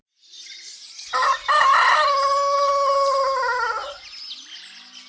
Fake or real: real